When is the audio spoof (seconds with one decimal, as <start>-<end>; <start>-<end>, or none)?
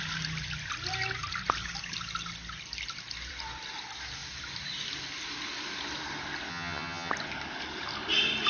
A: 6.5-7.1